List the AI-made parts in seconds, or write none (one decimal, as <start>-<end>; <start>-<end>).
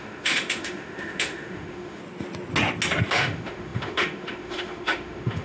0.0-2.0; 3.1-5.4